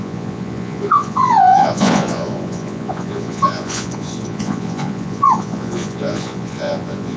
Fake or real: fake